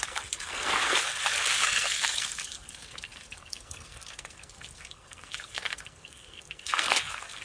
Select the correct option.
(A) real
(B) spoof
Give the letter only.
B